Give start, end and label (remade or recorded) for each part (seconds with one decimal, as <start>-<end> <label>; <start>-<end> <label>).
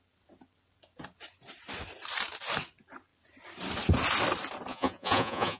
0.0-4.7 recorded; 4.7-5.6 remade